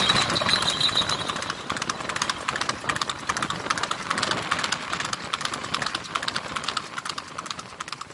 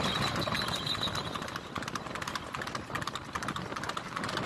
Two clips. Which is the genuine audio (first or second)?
first